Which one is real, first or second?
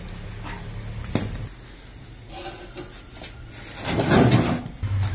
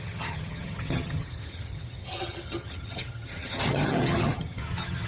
first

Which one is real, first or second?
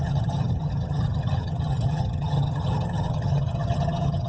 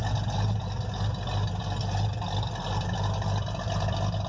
second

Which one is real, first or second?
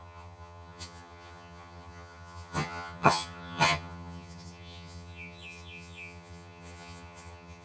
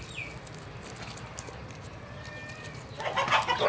second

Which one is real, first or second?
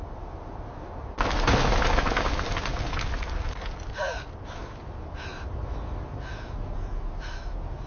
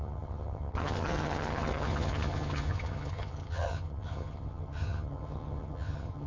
first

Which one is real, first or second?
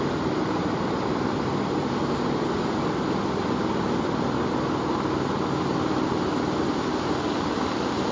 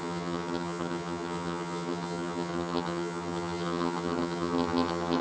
first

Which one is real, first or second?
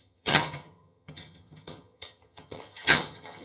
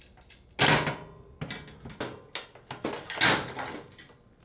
second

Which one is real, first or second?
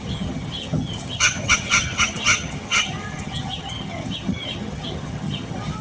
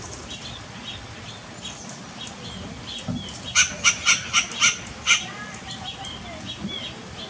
second